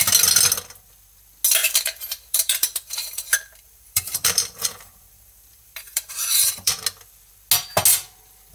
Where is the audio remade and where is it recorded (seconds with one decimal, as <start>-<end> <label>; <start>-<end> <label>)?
0.0-1.6 recorded; 1.6-6.7 remade; 6.7-8.5 recorded